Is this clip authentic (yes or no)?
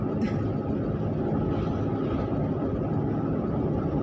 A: yes